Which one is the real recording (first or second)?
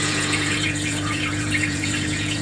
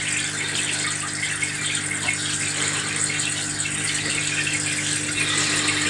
second